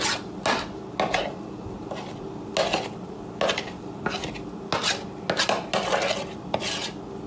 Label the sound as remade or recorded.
recorded